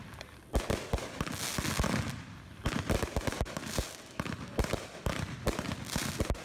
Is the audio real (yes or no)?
yes